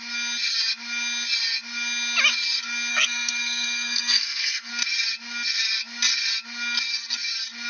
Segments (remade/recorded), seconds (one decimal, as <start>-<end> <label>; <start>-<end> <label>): 0.0-2.9 recorded; 2.9-4.7 remade; 4.7-7.7 recorded